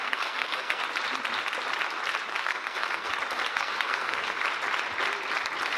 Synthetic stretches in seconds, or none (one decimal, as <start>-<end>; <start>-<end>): 0.0-0.8; 2.4-3.1; 3.5-4.4